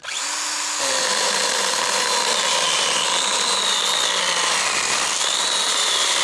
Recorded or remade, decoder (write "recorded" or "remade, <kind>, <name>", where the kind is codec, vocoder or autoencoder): recorded